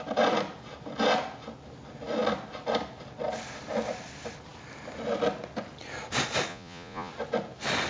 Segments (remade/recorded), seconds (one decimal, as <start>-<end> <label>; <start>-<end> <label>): 0.0-6.5 recorded; 6.5-7.1 remade; 7.1-7.9 recorded